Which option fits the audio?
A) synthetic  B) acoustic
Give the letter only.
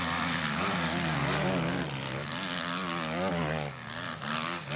B